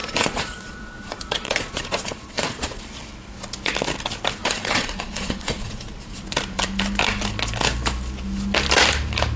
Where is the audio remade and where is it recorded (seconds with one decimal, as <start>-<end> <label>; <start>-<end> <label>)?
0.0-2.8 remade; 2.8-4.4 recorded; 4.4-6.2 remade; 6.2-9.4 recorded